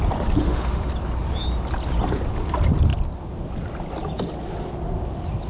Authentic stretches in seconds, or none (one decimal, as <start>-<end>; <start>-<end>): 0.0-0.4; 0.9-5.5